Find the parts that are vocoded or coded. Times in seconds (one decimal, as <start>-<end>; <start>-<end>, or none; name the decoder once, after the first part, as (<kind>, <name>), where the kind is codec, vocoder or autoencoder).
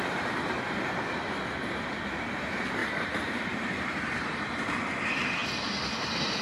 2.8-4.6 (vocoder, BigVGAN v2)